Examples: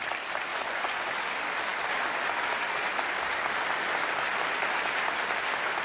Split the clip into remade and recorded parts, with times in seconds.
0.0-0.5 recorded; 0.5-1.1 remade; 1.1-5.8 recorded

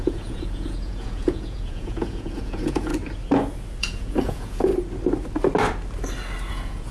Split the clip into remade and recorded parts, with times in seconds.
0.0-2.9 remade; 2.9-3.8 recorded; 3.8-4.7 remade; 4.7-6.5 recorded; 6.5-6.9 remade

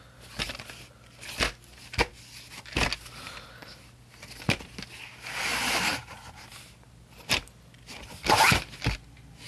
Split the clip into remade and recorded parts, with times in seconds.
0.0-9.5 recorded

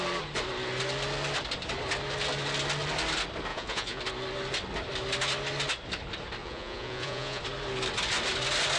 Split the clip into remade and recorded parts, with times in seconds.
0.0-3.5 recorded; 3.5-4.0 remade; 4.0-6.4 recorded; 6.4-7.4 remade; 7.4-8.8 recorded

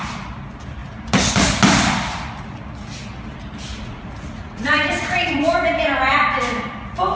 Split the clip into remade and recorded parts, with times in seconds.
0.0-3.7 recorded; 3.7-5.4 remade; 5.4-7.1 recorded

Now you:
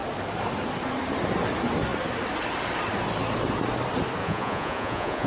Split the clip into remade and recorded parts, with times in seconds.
0.0-4.2 recorded; 4.2-5.3 remade